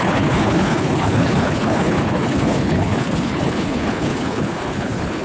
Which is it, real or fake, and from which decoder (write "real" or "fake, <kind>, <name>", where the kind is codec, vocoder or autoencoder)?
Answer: fake, codec, HILCodec